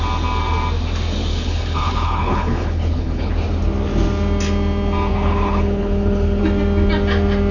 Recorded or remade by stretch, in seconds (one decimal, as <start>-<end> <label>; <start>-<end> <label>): 0.0-1.3 recorded; 1.3-3.3 remade; 3.3-5.1 recorded; 5.1-6.4 remade; 6.4-7.5 recorded